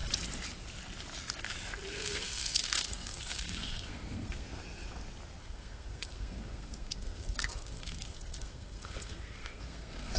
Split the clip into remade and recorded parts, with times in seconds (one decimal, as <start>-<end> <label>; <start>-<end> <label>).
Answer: 0.0-1.9 recorded; 1.9-4.6 remade; 4.6-5.4 recorded; 5.4-10.2 remade

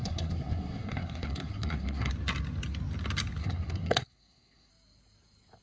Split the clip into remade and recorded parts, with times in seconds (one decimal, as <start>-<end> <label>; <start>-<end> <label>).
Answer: 0.0-2.1 remade; 2.1-3.4 recorded; 3.4-4.7 remade; 4.7-5.6 recorded